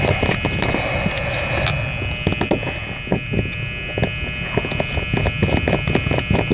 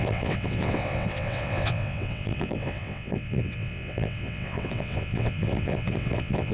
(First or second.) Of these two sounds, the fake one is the second